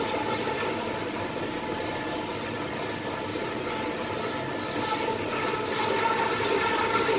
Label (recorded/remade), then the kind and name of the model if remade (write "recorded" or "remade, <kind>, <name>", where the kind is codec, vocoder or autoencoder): recorded